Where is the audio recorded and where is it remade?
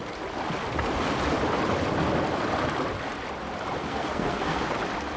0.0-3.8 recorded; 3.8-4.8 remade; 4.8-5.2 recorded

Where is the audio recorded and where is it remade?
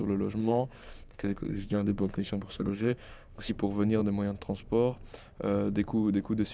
0.0-0.4 recorded; 0.4-3.5 remade; 3.5-6.5 recorded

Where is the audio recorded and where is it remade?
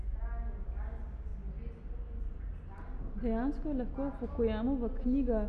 0.0-5.5 recorded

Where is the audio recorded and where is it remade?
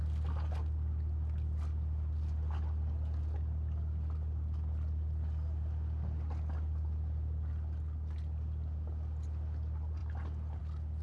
0.0-11.0 recorded